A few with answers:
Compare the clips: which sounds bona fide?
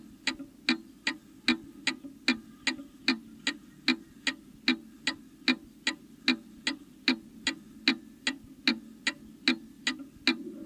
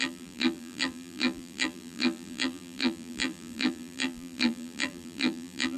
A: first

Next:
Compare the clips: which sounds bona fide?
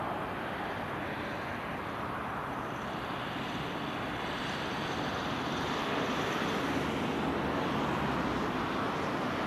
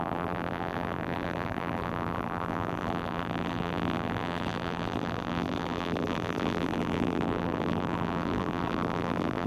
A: first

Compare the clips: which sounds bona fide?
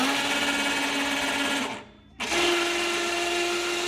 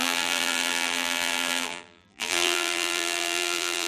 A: first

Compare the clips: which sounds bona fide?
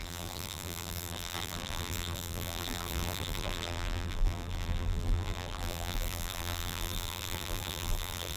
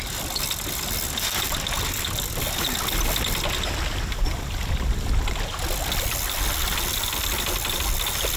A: second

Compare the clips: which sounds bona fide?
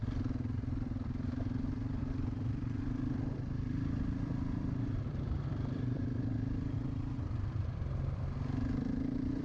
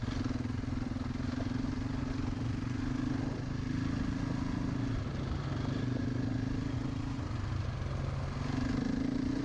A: second